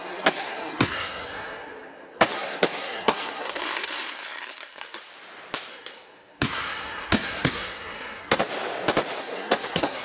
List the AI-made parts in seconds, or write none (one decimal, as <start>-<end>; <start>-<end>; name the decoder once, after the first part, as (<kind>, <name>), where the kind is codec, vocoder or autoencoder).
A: 0.0-5.0 (codec, SNAC); 5.7-8.4; 9.2-10.0